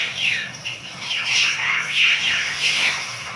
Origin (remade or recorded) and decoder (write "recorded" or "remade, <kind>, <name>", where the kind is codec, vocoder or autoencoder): remade, codec, SNAC